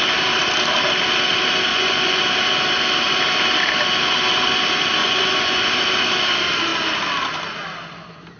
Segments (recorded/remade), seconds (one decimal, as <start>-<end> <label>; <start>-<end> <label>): 0.0-1.7 recorded; 1.7-2.2 remade; 2.2-5.0 recorded; 5.0-5.6 remade; 5.6-8.4 recorded